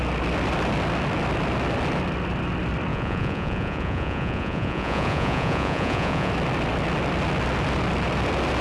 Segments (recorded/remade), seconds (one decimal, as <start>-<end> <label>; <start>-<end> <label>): 0.0-2.9 recorded; 2.9-6.3 remade; 6.3-8.6 recorded